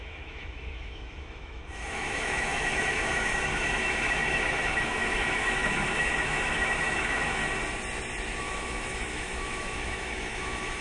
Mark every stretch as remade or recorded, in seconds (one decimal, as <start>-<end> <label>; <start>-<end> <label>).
0.0-7.4 remade; 7.4-8.4 recorded; 8.4-10.8 remade